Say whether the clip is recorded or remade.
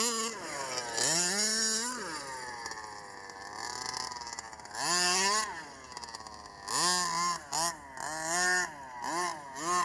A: recorded